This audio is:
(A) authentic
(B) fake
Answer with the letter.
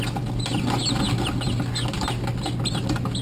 A